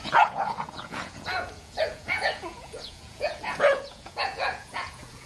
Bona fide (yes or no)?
no